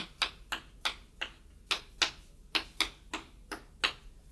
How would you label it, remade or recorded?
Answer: recorded